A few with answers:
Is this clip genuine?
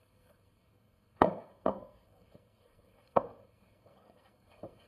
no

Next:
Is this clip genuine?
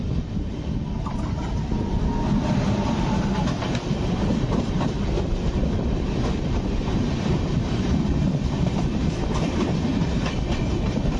no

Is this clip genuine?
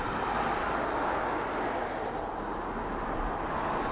yes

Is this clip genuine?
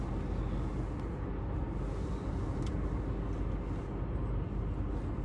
yes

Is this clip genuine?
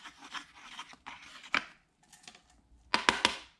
yes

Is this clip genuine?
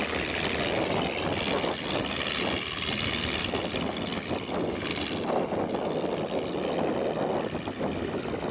yes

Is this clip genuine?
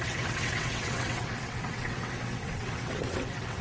no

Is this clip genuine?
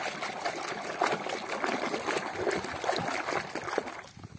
yes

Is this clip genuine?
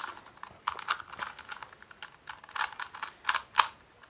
yes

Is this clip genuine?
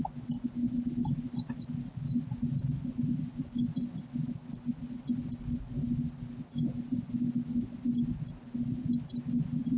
yes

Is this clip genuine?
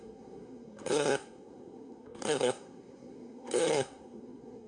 no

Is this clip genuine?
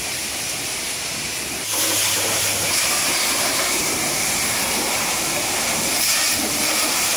no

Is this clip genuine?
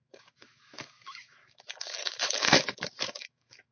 no